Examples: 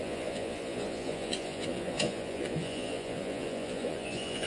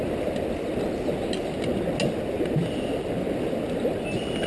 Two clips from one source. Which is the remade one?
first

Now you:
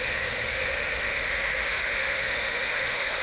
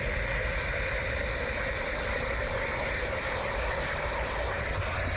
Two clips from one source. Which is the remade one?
first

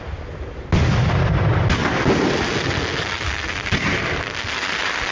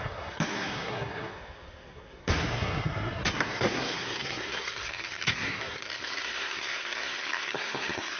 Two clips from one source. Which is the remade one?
second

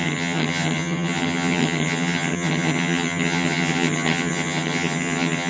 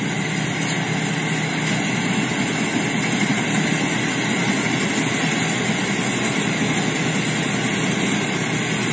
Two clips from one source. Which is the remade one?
first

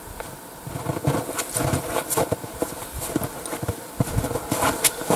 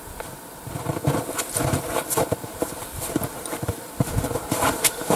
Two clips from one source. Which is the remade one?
second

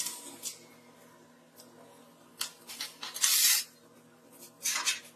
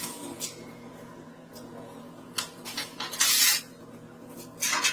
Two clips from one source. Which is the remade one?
second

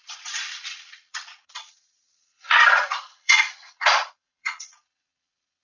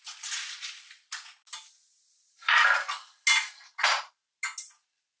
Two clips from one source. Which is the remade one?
first